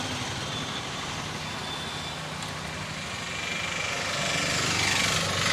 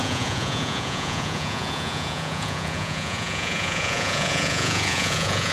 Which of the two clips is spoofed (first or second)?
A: second